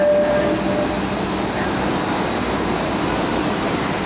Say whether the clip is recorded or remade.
recorded